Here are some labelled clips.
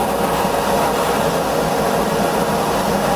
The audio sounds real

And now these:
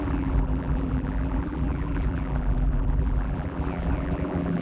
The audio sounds fake